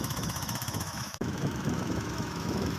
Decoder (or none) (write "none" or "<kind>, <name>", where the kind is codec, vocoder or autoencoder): autoencoder, DAC-VAE